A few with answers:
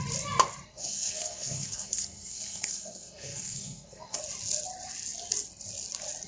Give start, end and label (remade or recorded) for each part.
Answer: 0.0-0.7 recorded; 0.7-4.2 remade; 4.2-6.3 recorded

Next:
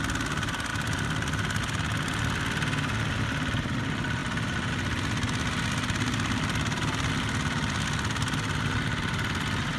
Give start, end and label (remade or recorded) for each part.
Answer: 0.0-0.7 recorded; 0.7-1.6 remade; 1.6-9.8 recorded

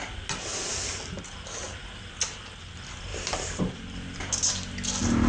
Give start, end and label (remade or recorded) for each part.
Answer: 0.0-0.5 recorded; 0.5-1.2 remade; 1.2-3.1 recorded; 3.1-3.6 remade; 3.6-5.3 recorded